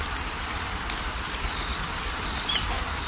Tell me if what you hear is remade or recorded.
remade